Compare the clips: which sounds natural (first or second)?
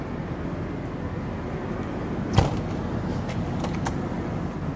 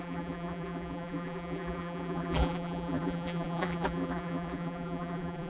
first